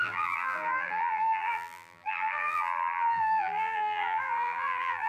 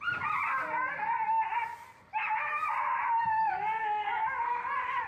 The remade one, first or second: first